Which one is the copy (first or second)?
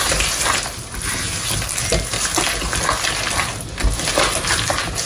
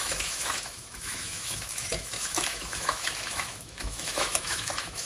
second